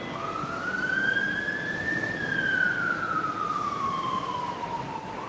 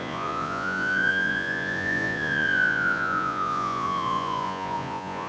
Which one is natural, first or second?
first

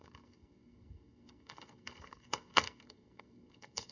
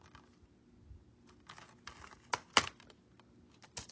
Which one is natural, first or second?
second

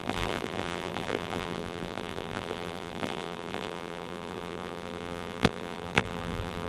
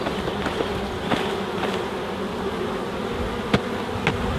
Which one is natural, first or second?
second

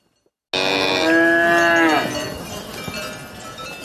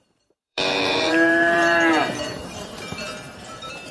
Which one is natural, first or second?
first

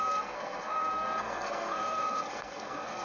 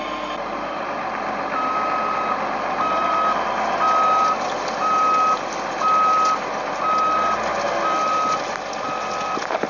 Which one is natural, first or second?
second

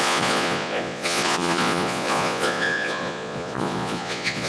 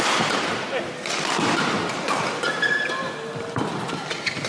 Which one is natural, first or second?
second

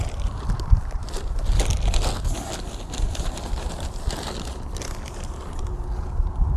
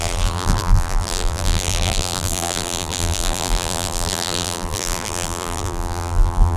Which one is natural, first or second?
first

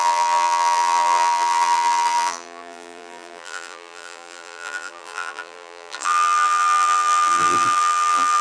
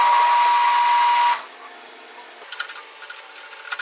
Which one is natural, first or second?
second